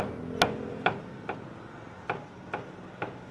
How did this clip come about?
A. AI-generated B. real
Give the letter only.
B